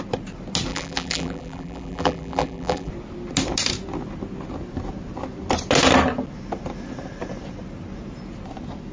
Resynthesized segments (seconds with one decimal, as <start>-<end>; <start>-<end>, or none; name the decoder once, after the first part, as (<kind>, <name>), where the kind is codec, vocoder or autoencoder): 0.7-2.9 (vocoder, BigVGAN v2)